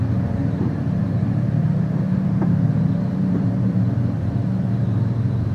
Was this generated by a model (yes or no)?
yes